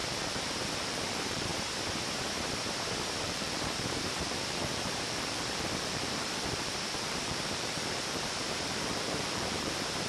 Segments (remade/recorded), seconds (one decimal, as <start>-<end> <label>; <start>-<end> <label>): 0.0-1.5 remade; 1.5-3.2 recorded; 3.2-10.1 remade